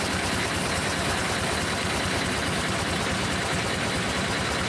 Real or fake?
real